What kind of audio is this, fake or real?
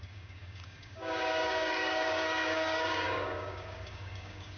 fake